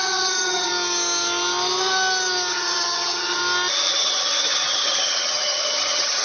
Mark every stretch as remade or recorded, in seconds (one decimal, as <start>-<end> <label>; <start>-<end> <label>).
0.0-0.7 remade; 0.7-2.5 recorded; 2.5-3.4 remade; 3.4-3.9 recorded; 3.9-6.2 remade